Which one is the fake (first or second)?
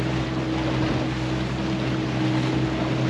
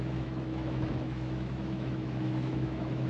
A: second